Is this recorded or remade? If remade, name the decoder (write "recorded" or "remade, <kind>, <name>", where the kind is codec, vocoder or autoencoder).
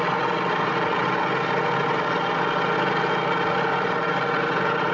recorded